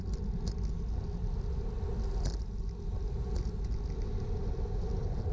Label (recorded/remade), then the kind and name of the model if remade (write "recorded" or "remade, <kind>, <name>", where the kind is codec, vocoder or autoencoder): recorded